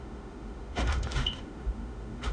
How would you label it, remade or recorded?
remade